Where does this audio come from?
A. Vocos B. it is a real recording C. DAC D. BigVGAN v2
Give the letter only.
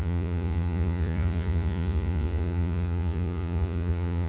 A